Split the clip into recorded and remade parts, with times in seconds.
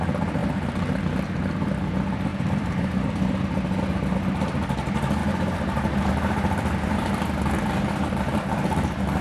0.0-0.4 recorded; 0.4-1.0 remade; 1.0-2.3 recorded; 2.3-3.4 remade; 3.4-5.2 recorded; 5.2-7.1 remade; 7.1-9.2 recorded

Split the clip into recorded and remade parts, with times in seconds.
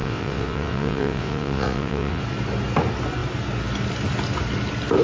0.0-2.2 remade; 2.2-5.0 recorded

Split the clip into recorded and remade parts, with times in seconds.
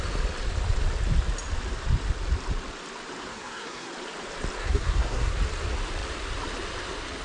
0.0-3.3 recorded; 3.3-3.9 remade; 3.9-4.6 recorded; 4.6-5.3 remade; 5.3-7.2 recorded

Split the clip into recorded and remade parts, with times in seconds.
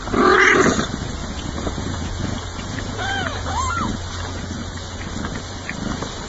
0.0-1.2 recorded; 1.2-3.9 remade; 3.9-6.3 recorded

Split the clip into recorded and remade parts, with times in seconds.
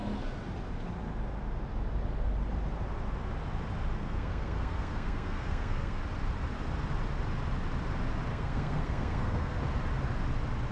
0.0-4.0 recorded; 4.0-6.0 remade; 6.0-8.3 recorded; 8.3-9.6 remade; 9.6-10.7 recorded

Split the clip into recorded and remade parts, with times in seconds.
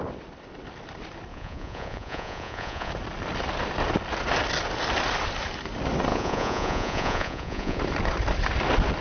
0.0-1.3 recorded; 1.3-2.9 remade; 2.9-6.1 recorded; 6.1-7.8 remade; 7.8-9.0 recorded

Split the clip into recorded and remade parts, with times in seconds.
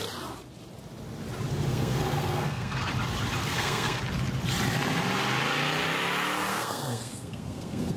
0.0-1.7 recorded; 1.7-2.9 remade; 2.9-3.4 recorded; 3.4-4.0 remade; 4.0-6.5 recorded; 6.5-8.0 remade